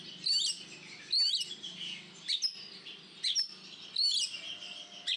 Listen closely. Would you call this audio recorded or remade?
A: recorded